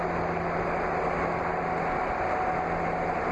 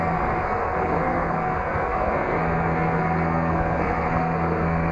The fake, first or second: second